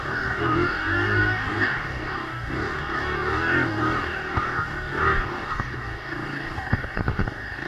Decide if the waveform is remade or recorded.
remade